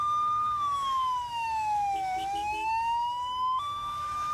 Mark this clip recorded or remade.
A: remade